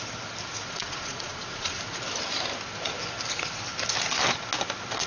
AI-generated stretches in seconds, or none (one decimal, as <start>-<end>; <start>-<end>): 0.6-1.8